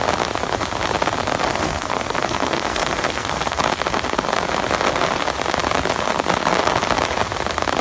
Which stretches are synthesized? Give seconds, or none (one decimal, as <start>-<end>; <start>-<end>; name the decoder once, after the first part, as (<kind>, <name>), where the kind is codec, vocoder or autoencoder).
1.5-3.6 (codec, SNAC)